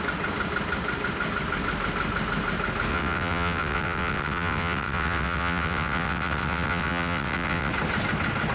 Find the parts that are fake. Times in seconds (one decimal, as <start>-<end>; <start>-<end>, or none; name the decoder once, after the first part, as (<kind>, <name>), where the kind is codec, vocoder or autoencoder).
2.9-7.7 (vocoder, WaveNeXt)